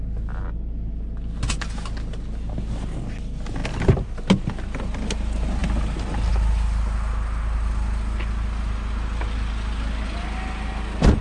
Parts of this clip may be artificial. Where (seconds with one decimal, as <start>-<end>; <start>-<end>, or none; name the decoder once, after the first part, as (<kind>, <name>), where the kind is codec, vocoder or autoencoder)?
none